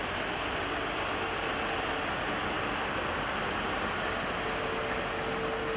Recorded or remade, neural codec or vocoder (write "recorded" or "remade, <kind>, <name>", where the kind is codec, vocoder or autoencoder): recorded